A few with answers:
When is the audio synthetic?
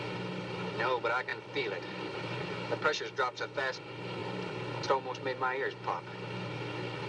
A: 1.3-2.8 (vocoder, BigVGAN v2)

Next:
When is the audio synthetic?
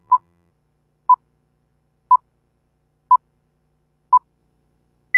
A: 0.0-0.5 (vocoder, BigVGAN v2)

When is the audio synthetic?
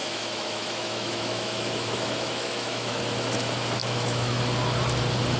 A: 0.0-3.0 (autoencoder, DAC-VAE); 3.8-4.4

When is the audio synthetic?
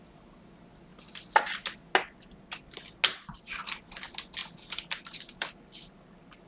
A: 4.4-6.5 (vocoder, BigVGAN v2)